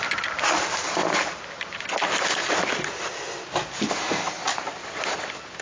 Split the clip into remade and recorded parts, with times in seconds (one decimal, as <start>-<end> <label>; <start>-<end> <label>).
0.0-5.6 recorded